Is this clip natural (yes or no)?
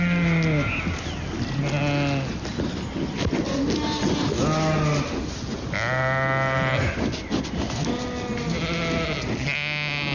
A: yes